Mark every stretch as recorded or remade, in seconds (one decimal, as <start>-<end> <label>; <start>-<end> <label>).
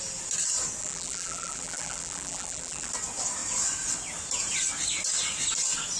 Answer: 0.0-0.8 recorded; 0.8-2.9 remade; 2.9-6.0 recorded